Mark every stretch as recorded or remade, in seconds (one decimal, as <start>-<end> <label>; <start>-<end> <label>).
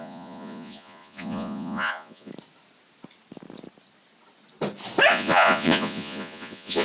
0.0-2.3 remade; 2.3-5.1 recorded; 5.1-6.8 remade